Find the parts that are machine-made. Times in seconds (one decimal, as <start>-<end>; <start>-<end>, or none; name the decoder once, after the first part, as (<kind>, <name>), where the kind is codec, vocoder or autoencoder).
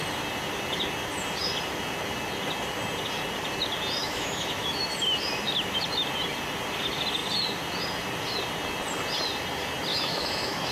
4.0-4.8 (autoencoder, DAC-VAE); 9.9-10.7